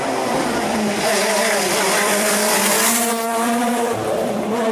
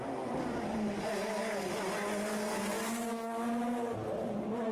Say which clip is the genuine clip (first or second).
second